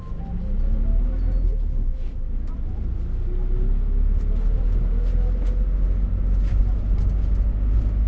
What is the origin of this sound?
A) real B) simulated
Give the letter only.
A